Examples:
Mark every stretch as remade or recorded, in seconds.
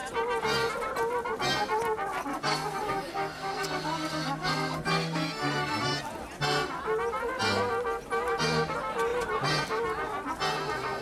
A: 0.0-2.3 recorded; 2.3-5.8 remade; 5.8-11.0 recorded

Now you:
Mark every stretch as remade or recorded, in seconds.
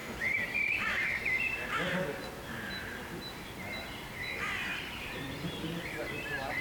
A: 0.0-2.3 remade; 2.3-2.8 recorded; 2.8-6.1 remade; 6.1-6.6 recorded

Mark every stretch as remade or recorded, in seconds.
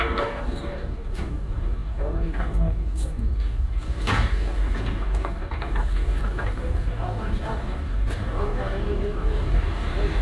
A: 0.0-10.2 remade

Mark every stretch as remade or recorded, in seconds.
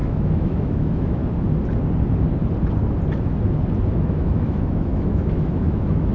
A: 0.0-1.2 remade; 1.2-3.9 recorded; 3.9-6.1 remade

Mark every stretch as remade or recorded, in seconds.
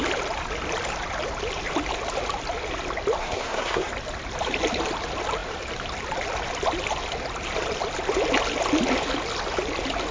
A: 0.0-3.2 recorded; 3.2-3.9 remade; 3.9-10.1 recorded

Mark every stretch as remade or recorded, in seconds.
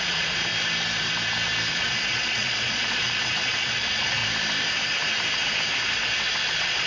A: 0.0-0.5 remade; 0.5-1.7 recorded; 1.7-4.2 remade; 4.2-6.5 recorded; 6.5-6.9 remade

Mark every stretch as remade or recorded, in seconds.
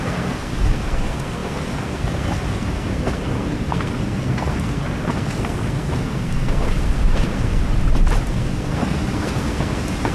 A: 0.0-7.6 remade; 7.6-8.3 recorded; 8.3-10.1 remade